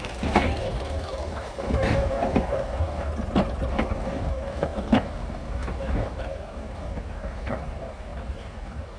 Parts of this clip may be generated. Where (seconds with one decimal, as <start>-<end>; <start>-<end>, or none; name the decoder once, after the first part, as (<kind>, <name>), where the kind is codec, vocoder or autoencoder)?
0.0-3.1 (codec, DAC); 3.7-9.0